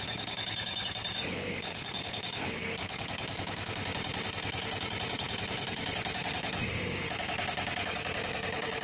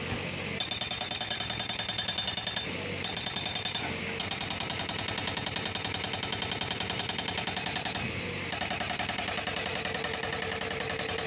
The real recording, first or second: second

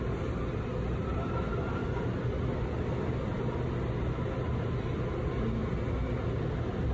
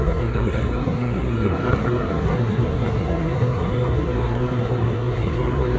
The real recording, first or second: first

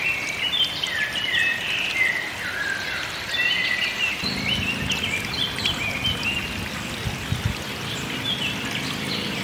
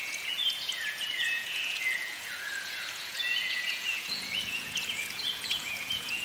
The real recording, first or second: first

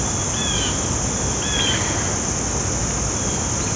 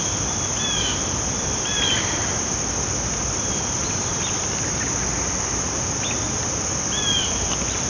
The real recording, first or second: first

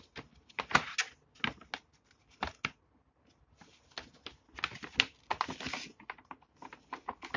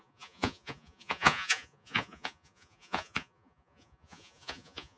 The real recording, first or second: first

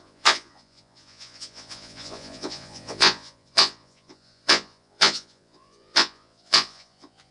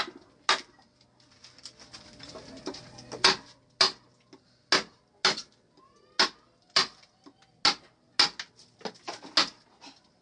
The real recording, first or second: second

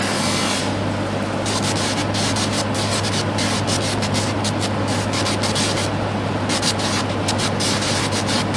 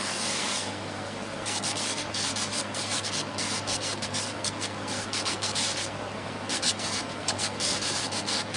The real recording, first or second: first